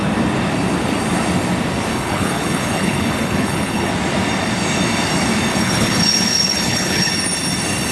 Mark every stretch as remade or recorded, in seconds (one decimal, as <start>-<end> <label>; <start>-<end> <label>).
0.0-1.9 recorded; 1.9-3.9 remade; 3.9-5.5 recorded; 5.5-7.1 remade; 7.1-7.9 recorded